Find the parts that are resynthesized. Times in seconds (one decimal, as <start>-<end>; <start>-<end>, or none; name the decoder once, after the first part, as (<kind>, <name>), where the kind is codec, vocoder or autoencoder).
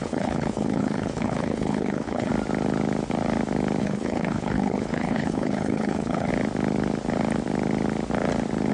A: 0.0-2.3 (codec, HILCodec); 3.8-6.3